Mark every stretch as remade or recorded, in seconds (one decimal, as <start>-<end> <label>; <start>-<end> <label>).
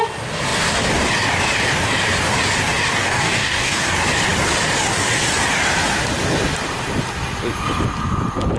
0.0-2.9 recorded; 2.9-3.9 remade; 3.9-8.6 recorded